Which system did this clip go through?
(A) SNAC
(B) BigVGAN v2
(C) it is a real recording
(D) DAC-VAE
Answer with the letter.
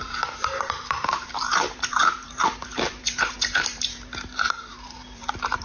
B